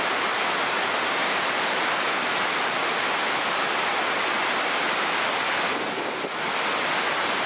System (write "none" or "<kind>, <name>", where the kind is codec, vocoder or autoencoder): none